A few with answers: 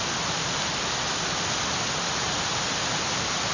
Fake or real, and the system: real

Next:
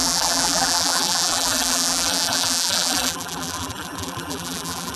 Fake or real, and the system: fake, vocoder, BigVGAN v2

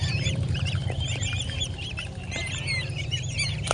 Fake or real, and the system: fake, vocoder, BigVGAN v2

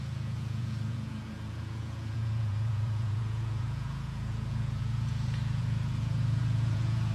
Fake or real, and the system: fake, vocoder, Vocos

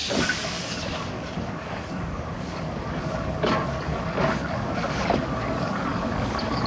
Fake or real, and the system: fake, codec, DAC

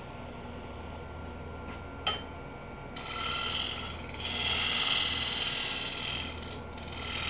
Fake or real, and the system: real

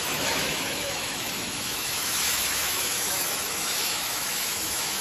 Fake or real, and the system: fake, autoencoder, DAC-VAE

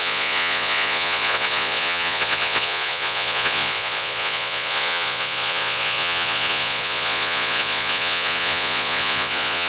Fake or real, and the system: fake, vocoder, Vocos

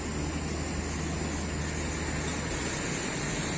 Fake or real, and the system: real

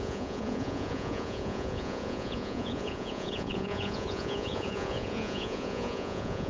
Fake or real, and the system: fake, vocoder, Vocos